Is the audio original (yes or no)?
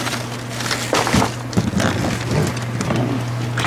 yes